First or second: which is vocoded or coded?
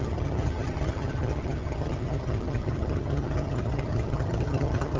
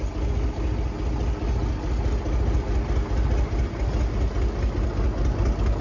first